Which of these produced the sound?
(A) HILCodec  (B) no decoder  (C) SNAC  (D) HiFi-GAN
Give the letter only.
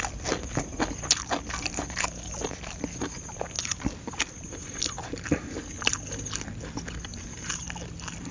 B